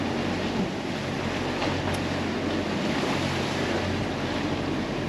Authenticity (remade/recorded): recorded